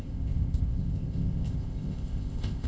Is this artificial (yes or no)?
yes